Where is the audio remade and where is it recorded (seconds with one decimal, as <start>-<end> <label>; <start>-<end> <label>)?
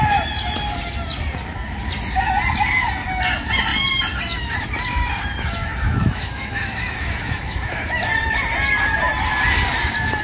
0.0-5.0 recorded; 5.0-8.0 remade; 8.0-10.2 recorded